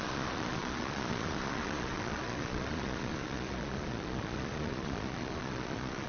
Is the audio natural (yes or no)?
no